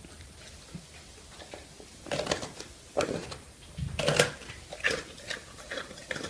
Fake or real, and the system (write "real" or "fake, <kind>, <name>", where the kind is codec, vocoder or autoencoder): real